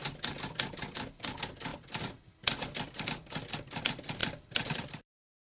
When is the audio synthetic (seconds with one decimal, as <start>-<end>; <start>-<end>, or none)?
1.7-2.2; 4.2-5.1